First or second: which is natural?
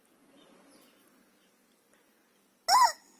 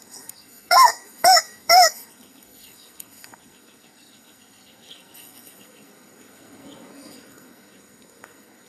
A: first